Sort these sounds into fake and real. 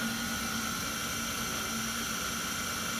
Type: real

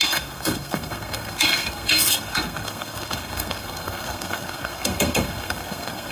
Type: fake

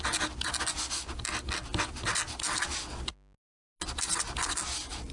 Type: real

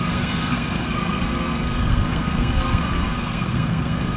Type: fake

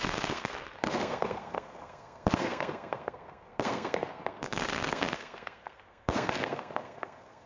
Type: fake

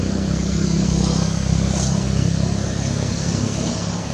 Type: fake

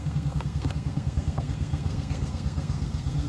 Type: fake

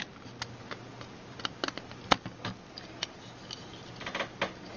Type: real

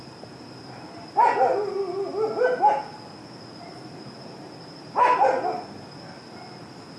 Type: real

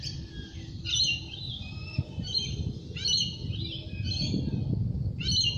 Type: real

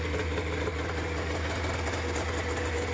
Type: real